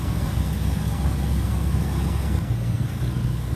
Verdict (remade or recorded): remade